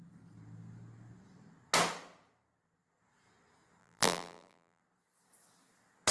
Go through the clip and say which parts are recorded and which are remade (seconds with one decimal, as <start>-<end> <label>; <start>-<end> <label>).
0.0-3.8 recorded; 3.8-4.8 remade; 4.8-6.1 recorded